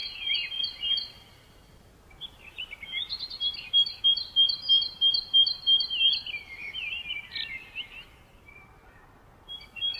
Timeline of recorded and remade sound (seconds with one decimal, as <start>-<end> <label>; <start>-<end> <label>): 0.0-0.5 remade; 0.5-10.0 recorded